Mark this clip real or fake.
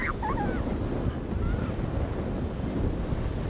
real